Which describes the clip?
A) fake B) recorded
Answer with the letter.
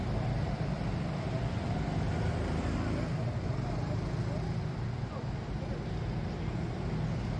B